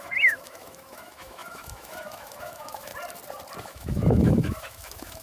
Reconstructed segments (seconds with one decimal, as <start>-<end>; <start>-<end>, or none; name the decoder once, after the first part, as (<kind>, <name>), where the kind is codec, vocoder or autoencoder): 0.0-2.9 (autoencoder, DAC-VAE); 3.6-5.2